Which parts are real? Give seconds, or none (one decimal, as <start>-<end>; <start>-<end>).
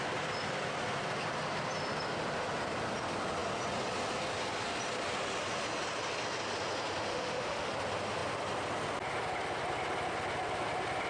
0.0-7.1; 7.7-11.1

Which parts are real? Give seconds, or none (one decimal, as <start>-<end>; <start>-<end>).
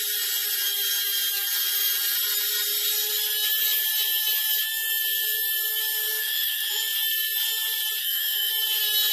0.0-6.2; 6.8-8.0; 8.5-9.1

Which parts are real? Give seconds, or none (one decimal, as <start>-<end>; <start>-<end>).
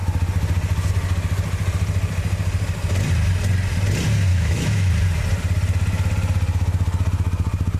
0.0-4.3; 4.9-7.8